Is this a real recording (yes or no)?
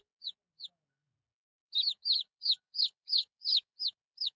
no